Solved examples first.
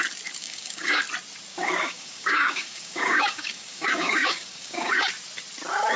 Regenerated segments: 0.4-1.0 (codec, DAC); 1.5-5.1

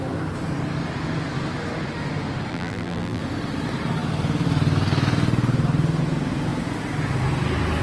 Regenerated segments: 2.5-3.2 (vocoder, BigVGAN v2)